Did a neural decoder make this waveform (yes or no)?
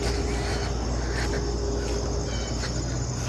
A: no